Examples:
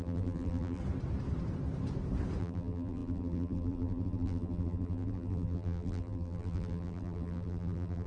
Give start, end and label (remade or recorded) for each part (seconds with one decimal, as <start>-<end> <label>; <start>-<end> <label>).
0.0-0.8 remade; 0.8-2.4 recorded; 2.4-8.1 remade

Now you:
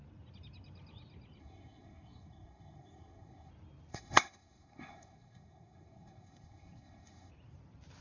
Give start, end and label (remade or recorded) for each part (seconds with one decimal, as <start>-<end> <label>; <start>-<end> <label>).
0.0-1.4 recorded; 1.4-3.5 remade; 3.5-3.9 recorded; 3.9-7.3 remade; 7.3-8.0 recorded

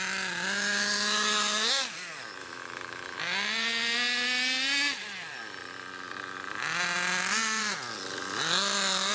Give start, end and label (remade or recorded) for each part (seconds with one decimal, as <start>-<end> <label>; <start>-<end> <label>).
0.0-2.4 recorded; 2.4-3.2 remade; 3.2-9.1 recorded

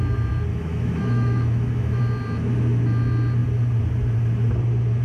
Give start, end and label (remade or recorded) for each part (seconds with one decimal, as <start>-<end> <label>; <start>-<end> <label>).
0.0-0.5 recorded; 0.5-2.0 remade; 2.0-5.0 recorded